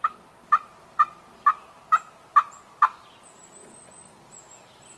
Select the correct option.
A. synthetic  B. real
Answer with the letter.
B